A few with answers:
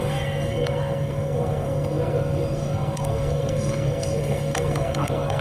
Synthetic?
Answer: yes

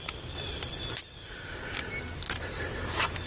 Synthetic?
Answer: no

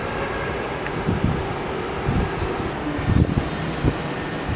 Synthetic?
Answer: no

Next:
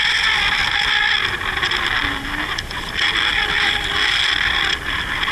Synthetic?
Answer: no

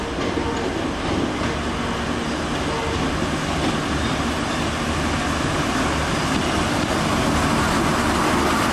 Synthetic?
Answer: no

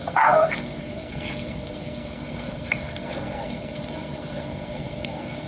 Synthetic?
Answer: yes